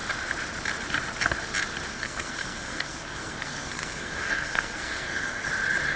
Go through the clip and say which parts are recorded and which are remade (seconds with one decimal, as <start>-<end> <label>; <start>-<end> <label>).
0.0-1.9 recorded; 1.9-5.5 remade; 5.5-6.0 recorded